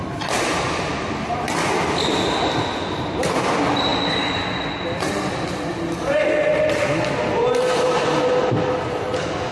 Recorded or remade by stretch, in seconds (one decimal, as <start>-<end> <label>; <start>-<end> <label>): 0.0-9.5 recorded